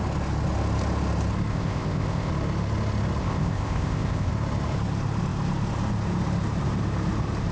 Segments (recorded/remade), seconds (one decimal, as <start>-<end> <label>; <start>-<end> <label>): 0.0-1.5 recorded; 1.5-2.3 remade; 2.3-3.2 recorded; 3.2-4.3 remade; 4.3-7.5 recorded